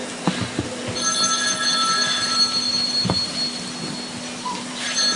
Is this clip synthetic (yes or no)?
yes